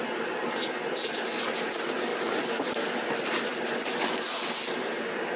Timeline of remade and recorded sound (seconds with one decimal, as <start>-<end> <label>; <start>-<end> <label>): 0.0-5.4 recorded